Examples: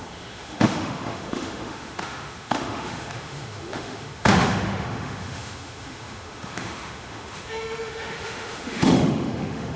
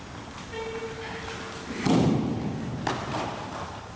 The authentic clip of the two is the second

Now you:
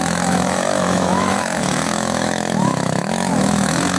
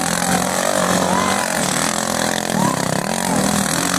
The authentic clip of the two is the second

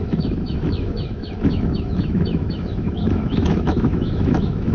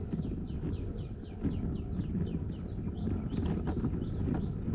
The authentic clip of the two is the second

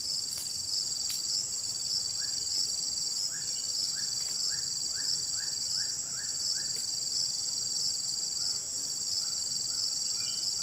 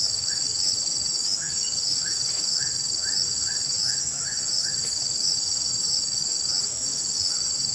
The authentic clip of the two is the first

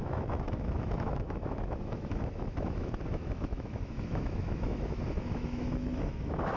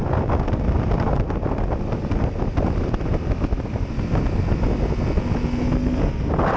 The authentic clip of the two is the second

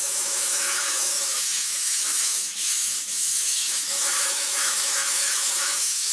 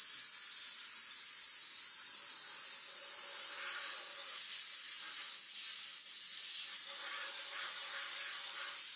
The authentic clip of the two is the second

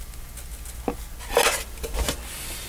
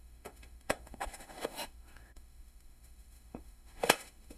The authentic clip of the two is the first